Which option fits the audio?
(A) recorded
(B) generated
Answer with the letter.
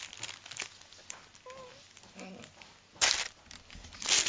A